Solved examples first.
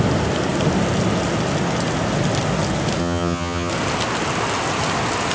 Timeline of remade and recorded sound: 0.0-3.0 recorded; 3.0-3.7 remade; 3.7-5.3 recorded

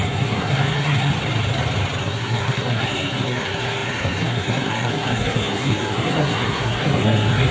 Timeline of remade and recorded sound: 0.0-1.1 remade; 1.1-2.0 recorded; 2.0-7.5 remade

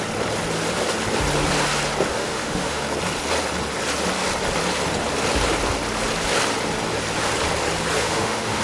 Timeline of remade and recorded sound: 0.0-2.1 recorded; 2.1-2.8 remade; 2.8-8.0 recorded; 8.0-8.6 remade